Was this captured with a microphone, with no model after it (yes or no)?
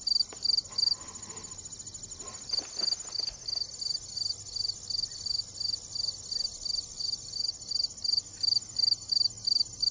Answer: yes